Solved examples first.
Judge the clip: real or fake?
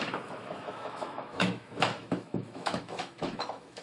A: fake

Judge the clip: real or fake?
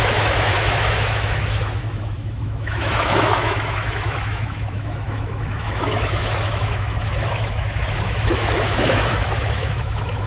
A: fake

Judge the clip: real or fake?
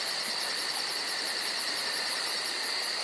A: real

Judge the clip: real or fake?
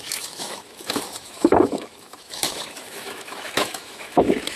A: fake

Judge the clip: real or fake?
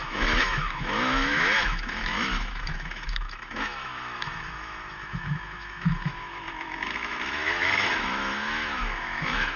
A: fake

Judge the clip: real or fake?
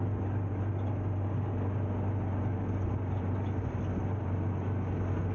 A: real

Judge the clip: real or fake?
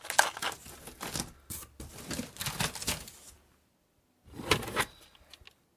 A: real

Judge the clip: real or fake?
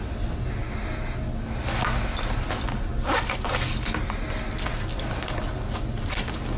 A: real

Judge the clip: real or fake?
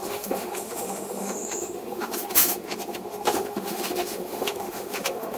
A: fake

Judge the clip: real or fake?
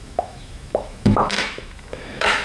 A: fake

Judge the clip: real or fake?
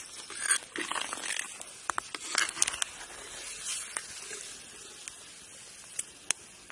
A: real